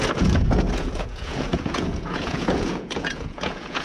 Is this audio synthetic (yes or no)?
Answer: yes